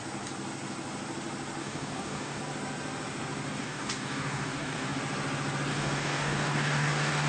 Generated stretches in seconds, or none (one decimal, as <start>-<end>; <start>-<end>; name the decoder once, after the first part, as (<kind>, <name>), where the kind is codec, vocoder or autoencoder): 1.6-2.4 (codec, DAC); 3.6-5.0; 5.7-7.3